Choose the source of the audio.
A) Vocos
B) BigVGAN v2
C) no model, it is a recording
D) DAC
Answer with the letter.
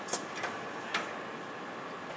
C